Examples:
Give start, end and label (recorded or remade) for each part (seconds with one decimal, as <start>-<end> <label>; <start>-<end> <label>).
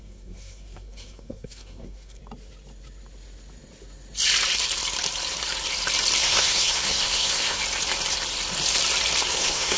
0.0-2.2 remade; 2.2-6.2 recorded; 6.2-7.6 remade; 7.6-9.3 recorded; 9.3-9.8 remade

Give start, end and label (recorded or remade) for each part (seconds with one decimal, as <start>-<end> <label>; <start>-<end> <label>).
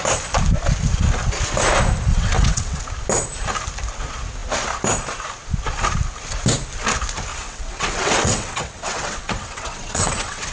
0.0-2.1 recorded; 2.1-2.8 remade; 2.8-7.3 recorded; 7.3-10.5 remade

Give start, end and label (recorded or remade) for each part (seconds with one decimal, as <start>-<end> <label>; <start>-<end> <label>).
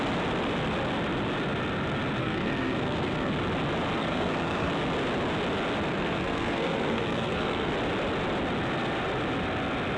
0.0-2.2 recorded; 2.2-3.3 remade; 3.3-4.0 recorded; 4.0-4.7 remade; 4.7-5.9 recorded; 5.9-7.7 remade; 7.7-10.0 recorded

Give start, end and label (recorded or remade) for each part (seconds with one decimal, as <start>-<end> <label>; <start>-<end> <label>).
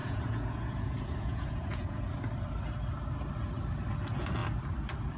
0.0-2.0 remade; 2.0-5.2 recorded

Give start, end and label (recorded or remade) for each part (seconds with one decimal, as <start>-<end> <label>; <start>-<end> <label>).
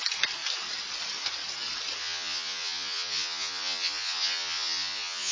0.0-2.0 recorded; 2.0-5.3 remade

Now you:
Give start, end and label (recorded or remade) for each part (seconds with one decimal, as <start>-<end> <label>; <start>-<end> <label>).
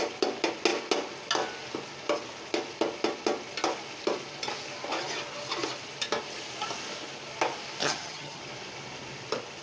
0.0-7.8 recorded; 7.8-8.4 remade; 8.4-9.6 recorded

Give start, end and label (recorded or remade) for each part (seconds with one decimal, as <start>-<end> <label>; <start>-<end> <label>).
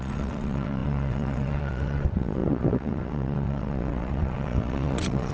0.0-5.3 remade